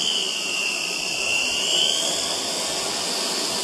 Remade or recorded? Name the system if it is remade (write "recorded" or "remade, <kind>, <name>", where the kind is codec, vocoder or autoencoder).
recorded